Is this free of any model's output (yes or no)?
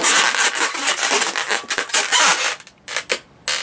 yes